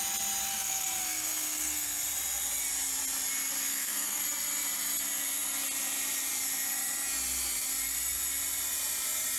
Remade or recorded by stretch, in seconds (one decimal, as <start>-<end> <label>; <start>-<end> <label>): 0.0-0.5 recorded; 0.5-2.0 remade; 2.0-3.7 recorded; 3.7-4.2 remade; 4.2-9.4 recorded

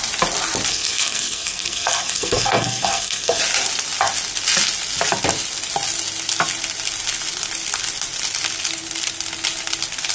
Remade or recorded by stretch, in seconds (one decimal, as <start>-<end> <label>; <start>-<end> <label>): 0.0-0.7 recorded; 0.7-3.4 remade; 3.4-10.1 recorded

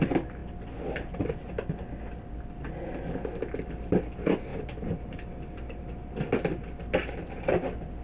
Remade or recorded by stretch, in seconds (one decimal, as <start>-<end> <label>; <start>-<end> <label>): 0.0-8.0 recorded

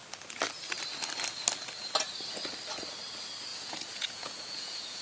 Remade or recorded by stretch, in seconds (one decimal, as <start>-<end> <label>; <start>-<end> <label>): 0.0-3.5 recorded; 3.5-5.0 remade

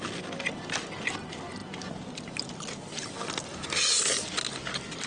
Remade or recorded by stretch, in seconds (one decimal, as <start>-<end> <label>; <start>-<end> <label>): 0.0-5.1 recorded

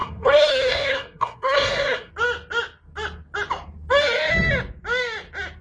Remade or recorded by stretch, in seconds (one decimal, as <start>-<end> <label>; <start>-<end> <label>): 0.0-2.1 remade; 2.1-5.6 recorded

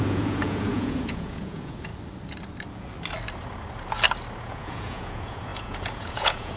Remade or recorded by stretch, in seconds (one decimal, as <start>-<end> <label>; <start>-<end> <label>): 0.0-1.9 remade; 1.9-4.4 recorded; 4.4-6.6 remade

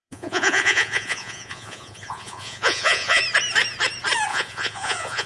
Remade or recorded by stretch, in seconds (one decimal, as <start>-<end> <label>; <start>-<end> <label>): 0.0-3.2 remade; 3.2-4.3 recorded; 4.3-5.3 remade